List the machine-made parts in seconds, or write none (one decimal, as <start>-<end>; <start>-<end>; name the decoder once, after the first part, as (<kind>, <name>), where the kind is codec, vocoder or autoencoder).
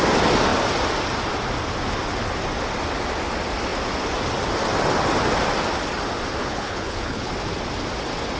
6.4-7.3 (codec, HILCodec)